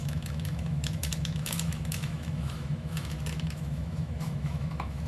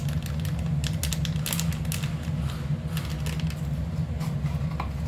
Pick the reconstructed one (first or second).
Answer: first